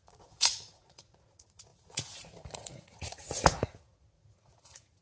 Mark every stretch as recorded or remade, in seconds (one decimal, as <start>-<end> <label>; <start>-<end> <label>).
0.0-5.0 remade